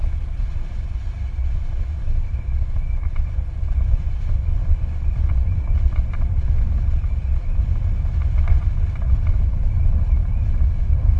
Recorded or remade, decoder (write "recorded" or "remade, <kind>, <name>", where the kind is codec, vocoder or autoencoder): recorded